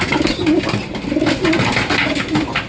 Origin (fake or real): real